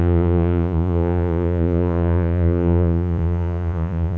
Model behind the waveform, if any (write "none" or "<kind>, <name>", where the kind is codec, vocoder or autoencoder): vocoder, Vocos